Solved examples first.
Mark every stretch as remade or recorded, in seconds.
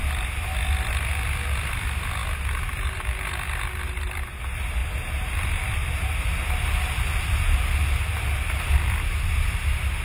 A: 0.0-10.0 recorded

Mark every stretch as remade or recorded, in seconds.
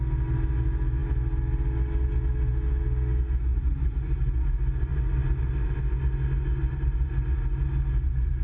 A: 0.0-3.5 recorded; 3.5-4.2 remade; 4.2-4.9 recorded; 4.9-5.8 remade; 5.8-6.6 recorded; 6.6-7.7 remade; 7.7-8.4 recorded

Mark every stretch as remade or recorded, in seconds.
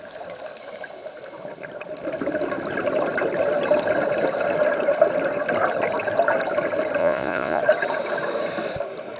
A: 0.0-7.0 recorded; 7.0-7.6 remade; 7.6-9.2 recorded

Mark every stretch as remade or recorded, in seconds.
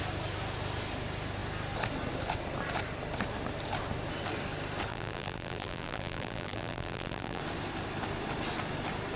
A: 0.0-4.9 recorded; 4.9-7.4 remade; 7.4-9.2 recorded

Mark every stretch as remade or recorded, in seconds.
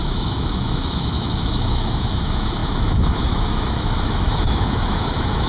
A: 0.0-5.5 remade